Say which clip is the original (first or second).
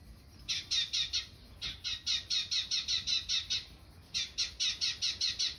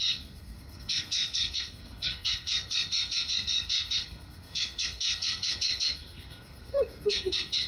first